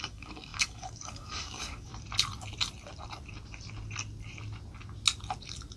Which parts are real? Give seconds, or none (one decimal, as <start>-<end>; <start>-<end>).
1.9-5.8